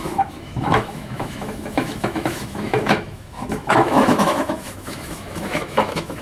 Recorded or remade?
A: remade